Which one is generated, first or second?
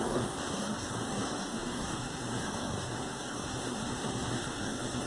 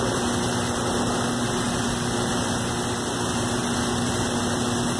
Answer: first